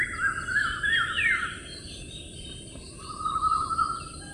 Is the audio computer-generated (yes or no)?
no